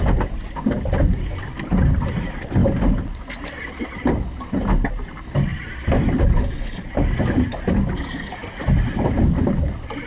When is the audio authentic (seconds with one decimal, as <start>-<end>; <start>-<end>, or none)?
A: 0.0-10.1